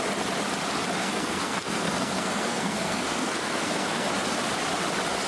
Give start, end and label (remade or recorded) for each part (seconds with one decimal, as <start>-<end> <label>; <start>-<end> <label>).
0.0-1.0 recorded; 1.0-4.1 remade; 4.1-5.3 recorded